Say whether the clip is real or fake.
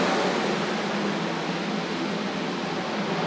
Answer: real